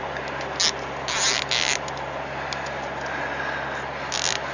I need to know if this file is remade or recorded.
recorded